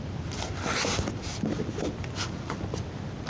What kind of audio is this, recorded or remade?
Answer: recorded